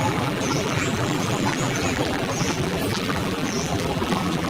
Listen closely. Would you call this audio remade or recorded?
remade